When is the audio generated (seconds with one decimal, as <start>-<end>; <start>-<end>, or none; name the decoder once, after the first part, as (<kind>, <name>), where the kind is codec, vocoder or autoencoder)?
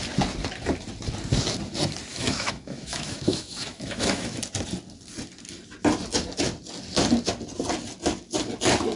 2.1-4.4 (autoencoder, DAC-VAE)